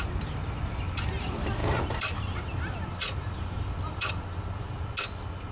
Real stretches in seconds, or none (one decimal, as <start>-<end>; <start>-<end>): 0.0-1.6; 4.9-5.5